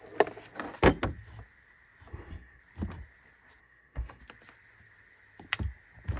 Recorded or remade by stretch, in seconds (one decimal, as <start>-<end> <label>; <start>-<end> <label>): 0.0-2.1 recorded; 2.1-2.6 remade; 2.6-3.6 recorded; 3.6-4.2 remade; 4.2-6.2 recorded